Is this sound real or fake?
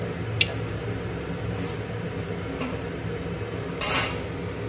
real